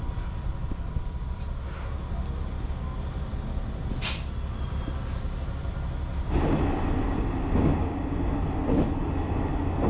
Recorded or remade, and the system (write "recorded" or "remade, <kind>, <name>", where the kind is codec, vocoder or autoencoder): recorded